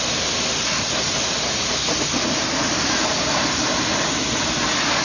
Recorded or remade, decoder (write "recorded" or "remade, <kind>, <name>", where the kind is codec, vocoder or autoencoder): recorded